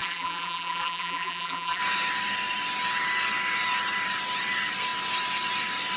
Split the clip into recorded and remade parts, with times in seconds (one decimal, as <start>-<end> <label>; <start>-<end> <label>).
0.0-1.8 remade; 1.8-6.0 recorded